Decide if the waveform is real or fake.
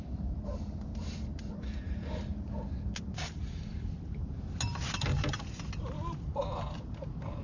real